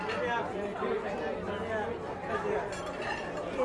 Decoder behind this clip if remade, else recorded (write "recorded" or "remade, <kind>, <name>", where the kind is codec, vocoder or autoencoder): recorded